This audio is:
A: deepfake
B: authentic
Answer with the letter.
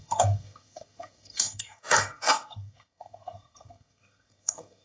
A